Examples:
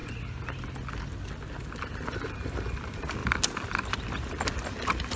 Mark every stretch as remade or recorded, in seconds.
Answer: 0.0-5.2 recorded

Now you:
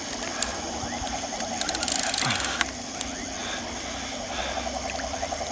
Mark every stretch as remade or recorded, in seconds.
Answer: 0.0-5.5 recorded

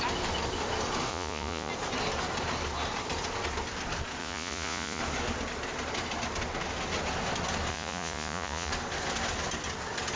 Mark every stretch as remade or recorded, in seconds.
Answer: 0.0-1.1 recorded; 1.1-1.7 remade; 1.7-4.2 recorded; 4.2-5.0 remade; 5.0-7.7 recorded; 7.7-8.7 remade; 8.7-10.2 recorded

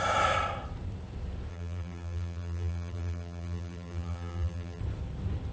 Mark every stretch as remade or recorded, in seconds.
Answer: 0.0-1.5 recorded; 1.5-4.8 remade; 4.8-5.5 recorded

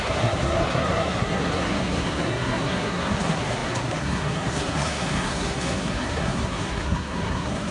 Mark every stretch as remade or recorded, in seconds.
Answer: 0.0-7.7 remade